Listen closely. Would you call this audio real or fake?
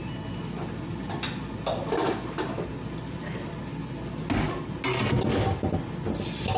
real